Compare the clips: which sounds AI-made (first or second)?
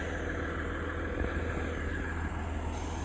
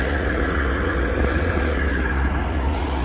second